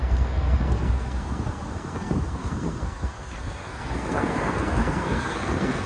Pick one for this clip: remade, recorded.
remade